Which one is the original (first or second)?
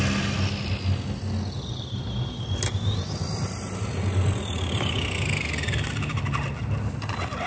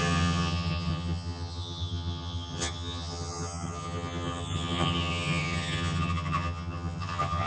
first